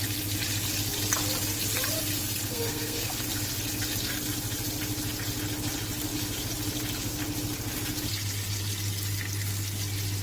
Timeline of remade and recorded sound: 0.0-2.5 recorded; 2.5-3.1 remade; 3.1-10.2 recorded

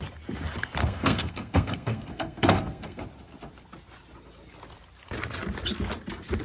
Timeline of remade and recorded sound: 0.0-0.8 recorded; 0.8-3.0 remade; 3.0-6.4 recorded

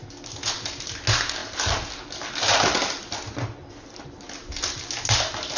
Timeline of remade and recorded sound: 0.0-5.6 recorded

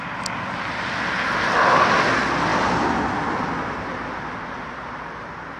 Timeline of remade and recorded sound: 0.0-5.6 recorded